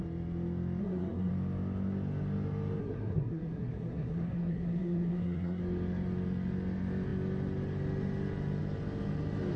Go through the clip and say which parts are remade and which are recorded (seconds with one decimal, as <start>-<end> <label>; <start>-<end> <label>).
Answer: 0.0-0.8 recorded; 0.8-1.3 remade; 1.3-2.8 recorded; 2.8-5.6 remade; 5.6-9.6 recorded